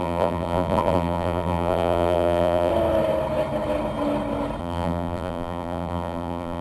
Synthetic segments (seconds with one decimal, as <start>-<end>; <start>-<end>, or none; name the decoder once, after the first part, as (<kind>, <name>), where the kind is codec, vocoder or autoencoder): 0.0-2.7 (vocoder, BigVGAN v2); 4.6-6.6